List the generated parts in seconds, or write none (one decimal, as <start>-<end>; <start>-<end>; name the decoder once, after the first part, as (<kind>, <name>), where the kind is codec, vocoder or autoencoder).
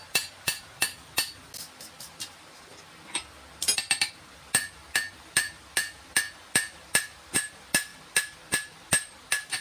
none